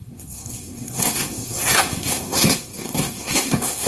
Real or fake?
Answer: fake